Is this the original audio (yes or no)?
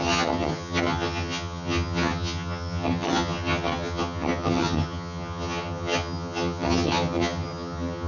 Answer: no